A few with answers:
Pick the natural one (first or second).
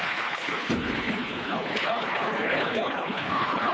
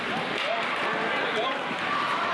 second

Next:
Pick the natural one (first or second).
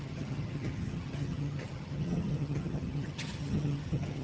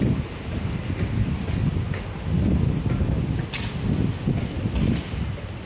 second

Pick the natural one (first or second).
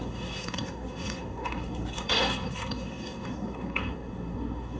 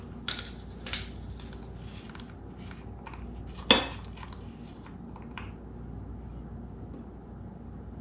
second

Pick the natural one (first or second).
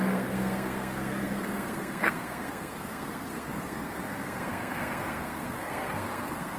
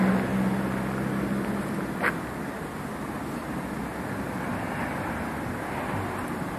second